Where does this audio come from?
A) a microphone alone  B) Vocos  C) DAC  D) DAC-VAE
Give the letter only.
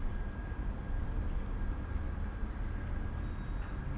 A